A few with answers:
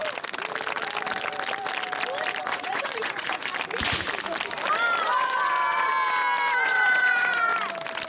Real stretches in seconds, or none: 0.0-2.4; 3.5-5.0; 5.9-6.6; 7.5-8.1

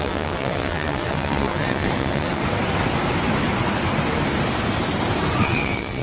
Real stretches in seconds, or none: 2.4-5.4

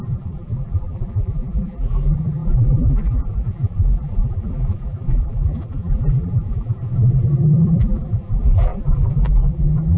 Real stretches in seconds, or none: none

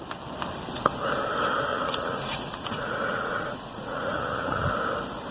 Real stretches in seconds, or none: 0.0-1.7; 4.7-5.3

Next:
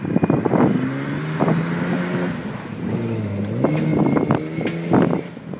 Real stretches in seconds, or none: 0.0-5.6

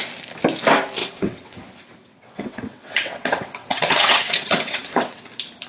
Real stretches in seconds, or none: 0.0-1.0; 1.6-2.0; 5.2-5.7

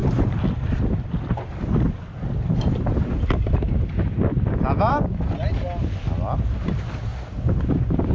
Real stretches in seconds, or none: 0.0-8.1